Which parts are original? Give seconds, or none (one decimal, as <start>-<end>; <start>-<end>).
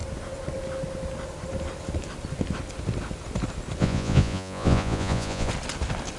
0.0-3.8; 5.5-6.2